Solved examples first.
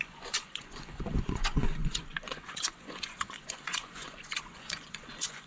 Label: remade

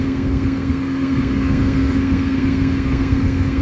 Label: remade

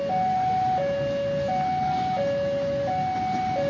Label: recorded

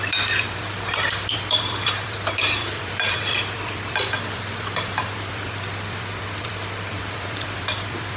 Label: remade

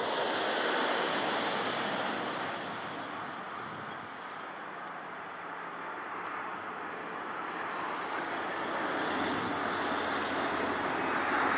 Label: recorded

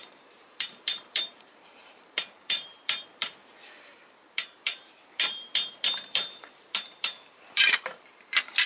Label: remade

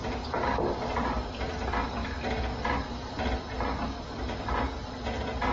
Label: recorded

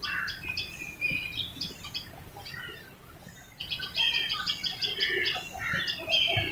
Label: recorded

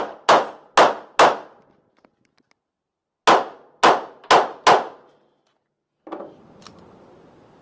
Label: recorded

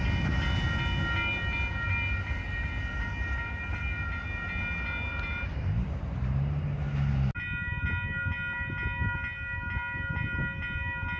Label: recorded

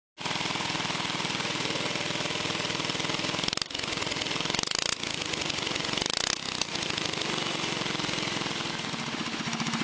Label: recorded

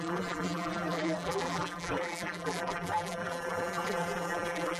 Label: remade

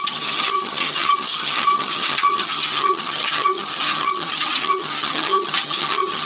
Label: remade